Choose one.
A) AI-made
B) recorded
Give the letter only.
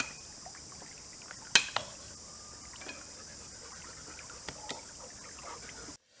B